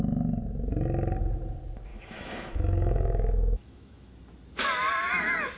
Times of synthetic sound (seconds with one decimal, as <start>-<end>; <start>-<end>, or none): 1.9-4.1